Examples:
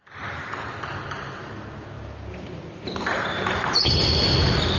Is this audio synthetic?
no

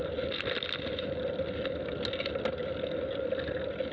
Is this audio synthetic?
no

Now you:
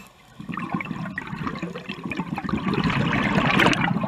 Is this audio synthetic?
yes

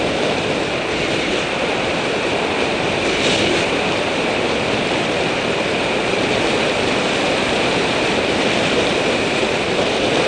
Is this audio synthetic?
yes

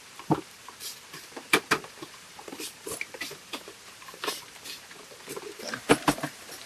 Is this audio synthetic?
yes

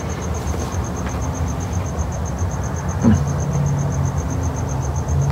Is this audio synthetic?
no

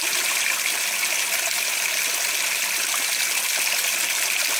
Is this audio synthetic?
no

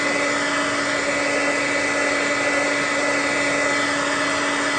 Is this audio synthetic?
no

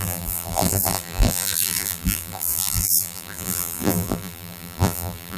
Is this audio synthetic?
yes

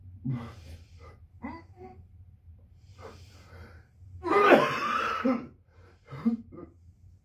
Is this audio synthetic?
yes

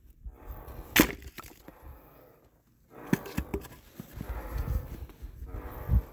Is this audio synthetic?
no